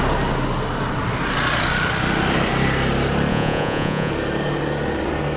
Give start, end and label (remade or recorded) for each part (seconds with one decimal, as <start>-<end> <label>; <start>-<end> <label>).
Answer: 0.0-3.3 recorded; 3.3-4.1 remade; 4.1-5.4 recorded